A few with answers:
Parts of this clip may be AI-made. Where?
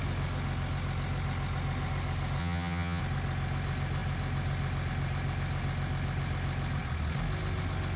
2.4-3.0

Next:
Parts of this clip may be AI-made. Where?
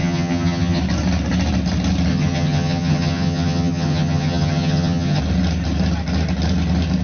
0.0-0.8; 2.1-5.2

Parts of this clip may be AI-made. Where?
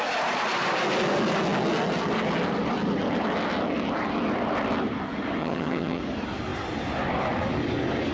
5.4-6.0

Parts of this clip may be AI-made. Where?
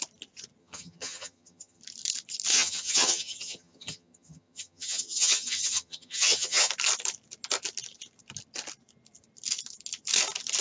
0.6-1.8; 2.5-6.7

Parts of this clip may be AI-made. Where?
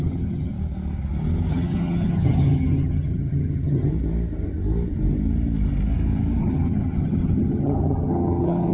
0.0-0.5; 1.5-3.9; 6.4-8.7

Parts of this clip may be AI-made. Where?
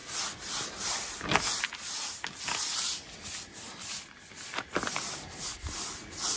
none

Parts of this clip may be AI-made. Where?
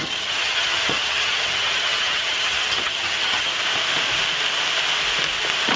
0.0-3.5